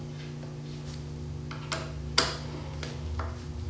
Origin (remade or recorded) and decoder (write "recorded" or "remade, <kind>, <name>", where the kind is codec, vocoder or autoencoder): recorded